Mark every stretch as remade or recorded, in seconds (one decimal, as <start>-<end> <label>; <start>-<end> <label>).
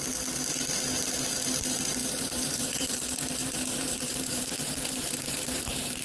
0.0-2.0 recorded; 2.0-3.0 remade; 3.0-3.4 recorded; 3.4-6.0 remade